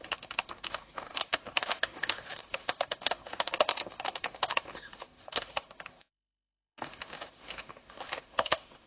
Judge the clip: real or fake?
fake